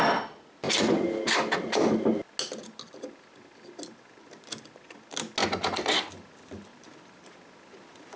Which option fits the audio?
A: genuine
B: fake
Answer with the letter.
A